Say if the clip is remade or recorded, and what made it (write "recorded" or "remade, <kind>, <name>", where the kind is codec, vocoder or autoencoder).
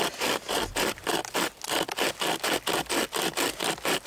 recorded